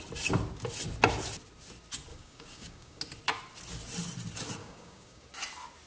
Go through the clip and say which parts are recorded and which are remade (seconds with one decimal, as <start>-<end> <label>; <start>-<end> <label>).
0.0-2.1 recorded; 2.1-3.0 remade; 3.0-4.6 recorded; 4.6-5.3 remade; 5.3-5.9 recorded

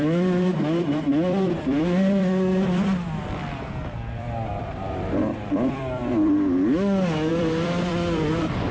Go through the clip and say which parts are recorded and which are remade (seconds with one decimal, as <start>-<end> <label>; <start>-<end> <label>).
0.0-6.0 remade; 6.0-7.3 recorded; 7.3-8.7 remade

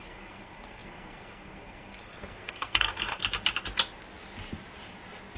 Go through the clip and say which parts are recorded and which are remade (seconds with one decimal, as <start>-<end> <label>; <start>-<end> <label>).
0.0-3.2 remade; 3.2-5.4 recorded

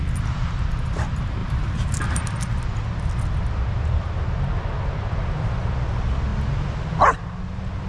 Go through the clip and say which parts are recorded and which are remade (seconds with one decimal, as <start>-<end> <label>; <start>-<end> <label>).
0.0-1.4 recorded; 1.4-2.0 remade; 2.0-7.9 recorded